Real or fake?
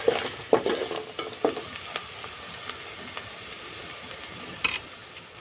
real